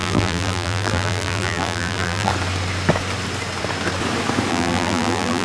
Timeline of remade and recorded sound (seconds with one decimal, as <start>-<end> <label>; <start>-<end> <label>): 0.0-2.3 remade; 2.3-4.5 recorded; 4.5-5.4 remade